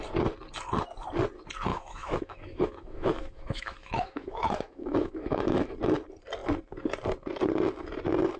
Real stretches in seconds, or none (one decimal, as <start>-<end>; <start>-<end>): 0.0-1.7; 5.7-8.4